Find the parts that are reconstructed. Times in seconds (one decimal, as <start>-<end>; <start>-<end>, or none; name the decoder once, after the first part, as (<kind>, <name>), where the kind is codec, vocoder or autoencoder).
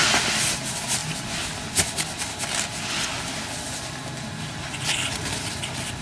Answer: none